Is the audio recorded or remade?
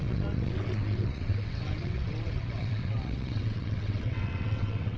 remade